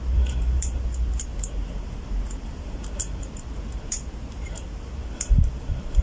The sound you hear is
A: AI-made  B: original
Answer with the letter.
A